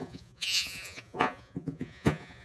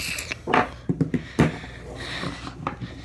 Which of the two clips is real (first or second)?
second